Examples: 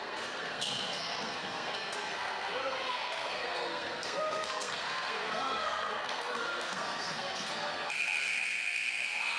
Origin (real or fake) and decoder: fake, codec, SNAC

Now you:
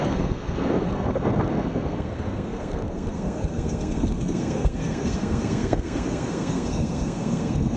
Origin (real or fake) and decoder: fake, codec, SNAC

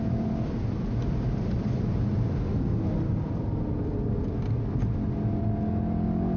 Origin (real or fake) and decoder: real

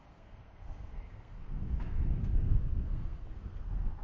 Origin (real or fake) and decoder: fake, codec, SNAC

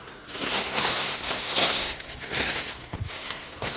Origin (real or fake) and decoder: fake, codec, SNAC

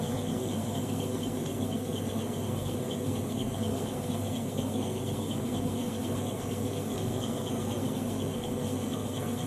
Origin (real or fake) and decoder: fake, codec, SNAC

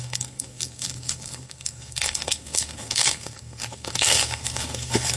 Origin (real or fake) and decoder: fake, codec, SNAC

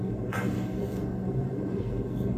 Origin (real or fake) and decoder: fake, codec, SNAC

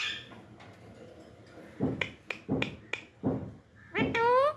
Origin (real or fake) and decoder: real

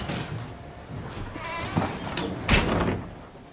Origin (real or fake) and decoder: real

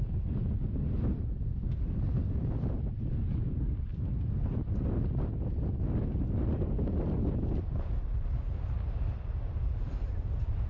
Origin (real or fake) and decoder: real